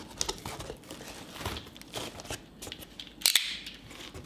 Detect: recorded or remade recorded